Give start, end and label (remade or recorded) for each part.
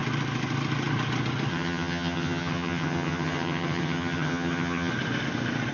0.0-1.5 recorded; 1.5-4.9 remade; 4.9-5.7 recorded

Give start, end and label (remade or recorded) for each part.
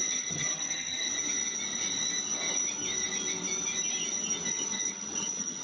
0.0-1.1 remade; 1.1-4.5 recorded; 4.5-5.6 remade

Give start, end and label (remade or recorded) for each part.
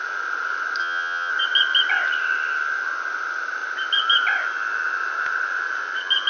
0.0-0.8 recorded; 0.8-1.3 remade; 1.3-6.3 recorded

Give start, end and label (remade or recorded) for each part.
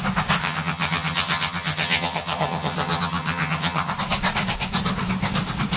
0.0-0.4 recorded; 0.4-3.9 remade; 3.9-5.8 recorded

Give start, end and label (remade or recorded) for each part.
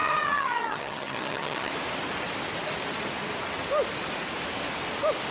0.0-1.7 remade; 1.7-5.3 recorded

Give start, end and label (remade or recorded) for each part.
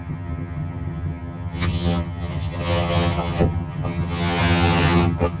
0.0-5.4 remade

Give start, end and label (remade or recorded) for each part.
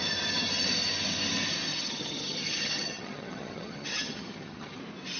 0.0-1.7 recorded; 1.7-4.8 remade; 4.8-5.2 recorded